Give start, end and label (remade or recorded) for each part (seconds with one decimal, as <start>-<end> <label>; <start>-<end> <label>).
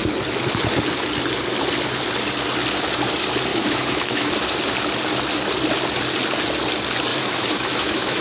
0.0-3.5 recorded; 3.5-4.3 remade; 4.3-7.1 recorded; 7.1-8.2 remade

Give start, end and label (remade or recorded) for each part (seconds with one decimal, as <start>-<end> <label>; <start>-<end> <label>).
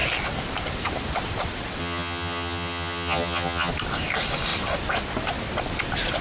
0.0-1.8 recorded; 1.8-3.7 remade; 3.7-6.2 recorded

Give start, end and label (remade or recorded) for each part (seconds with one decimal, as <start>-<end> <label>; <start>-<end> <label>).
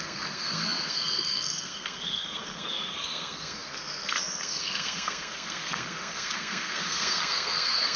0.0-8.0 remade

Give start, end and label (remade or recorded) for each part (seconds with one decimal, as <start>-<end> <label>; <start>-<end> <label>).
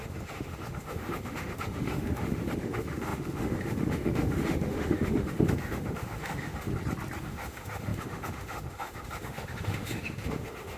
0.0-6.7 remade; 6.7-7.2 recorded; 7.2-10.8 remade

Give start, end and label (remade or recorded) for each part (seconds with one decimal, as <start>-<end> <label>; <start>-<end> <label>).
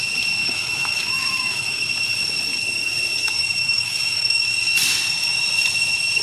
0.0-0.4 recorded; 0.4-1.8 remade; 1.8-3.4 recorded; 3.4-4.6 remade; 4.6-6.2 recorded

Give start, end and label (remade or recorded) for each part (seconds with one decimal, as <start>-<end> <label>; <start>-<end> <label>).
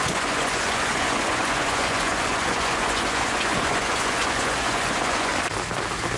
0.0-5.3 remade; 5.3-6.2 recorded